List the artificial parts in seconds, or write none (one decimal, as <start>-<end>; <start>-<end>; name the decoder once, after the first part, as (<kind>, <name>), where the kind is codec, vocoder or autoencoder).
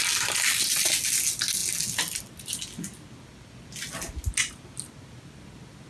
none